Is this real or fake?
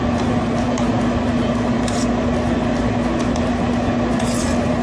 real